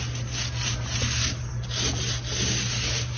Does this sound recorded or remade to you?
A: recorded